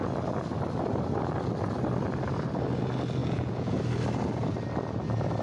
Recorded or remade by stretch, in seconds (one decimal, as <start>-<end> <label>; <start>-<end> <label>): 0.0-3.2 recorded; 3.2-3.8 remade; 3.8-5.4 recorded